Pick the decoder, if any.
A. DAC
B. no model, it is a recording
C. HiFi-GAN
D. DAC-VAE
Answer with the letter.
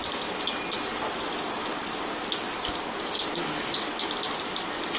B